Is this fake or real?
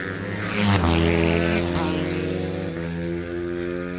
real